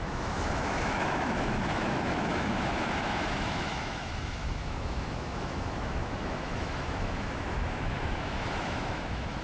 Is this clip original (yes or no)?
no